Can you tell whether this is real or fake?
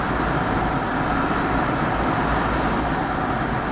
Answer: real